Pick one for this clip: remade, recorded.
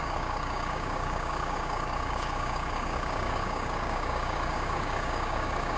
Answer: remade